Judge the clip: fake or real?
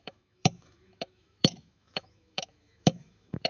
fake